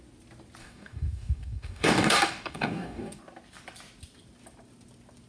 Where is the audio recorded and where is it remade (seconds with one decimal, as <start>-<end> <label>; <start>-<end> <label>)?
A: 0.0-0.6 recorded; 0.6-3.2 remade; 3.2-5.3 recorded